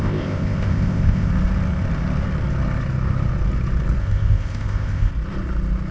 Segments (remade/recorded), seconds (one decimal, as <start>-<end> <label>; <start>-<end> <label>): 0.0-1.3 remade; 1.3-4.0 recorded; 4.0-5.1 remade; 5.1-5.9 recorded